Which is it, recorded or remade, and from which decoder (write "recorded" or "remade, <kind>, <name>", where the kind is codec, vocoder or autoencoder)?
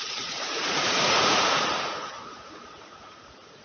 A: remade, vocoder, Vocos